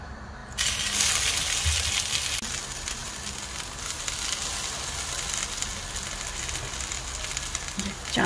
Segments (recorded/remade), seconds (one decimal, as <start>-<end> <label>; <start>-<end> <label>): 0.0-8.3 recorded